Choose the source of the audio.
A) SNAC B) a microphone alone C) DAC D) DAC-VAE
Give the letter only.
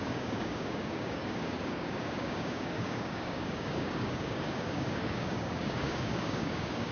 C